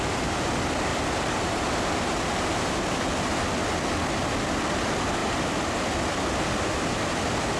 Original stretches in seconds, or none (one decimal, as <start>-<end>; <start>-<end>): 0.0-0.9; 3.4-5.2; 5.7-7.6